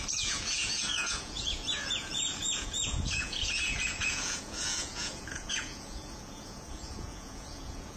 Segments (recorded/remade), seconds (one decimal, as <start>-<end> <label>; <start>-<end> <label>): 0.0-8.0 remade